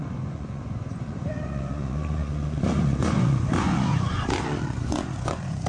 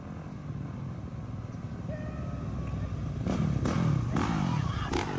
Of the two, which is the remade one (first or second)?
first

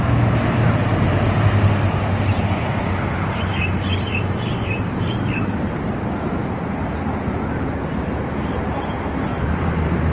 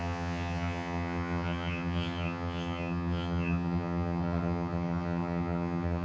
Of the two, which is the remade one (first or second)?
second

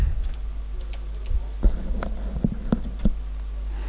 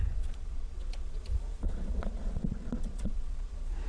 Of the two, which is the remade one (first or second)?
second